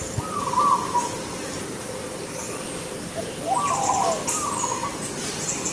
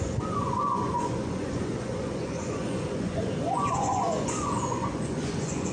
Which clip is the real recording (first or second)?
first